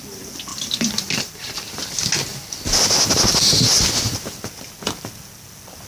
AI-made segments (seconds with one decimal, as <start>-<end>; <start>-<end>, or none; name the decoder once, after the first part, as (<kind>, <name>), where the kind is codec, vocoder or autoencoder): 0.5-1.9 (vocoder, BigVGAN v2)